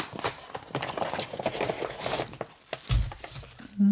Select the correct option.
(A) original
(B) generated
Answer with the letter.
A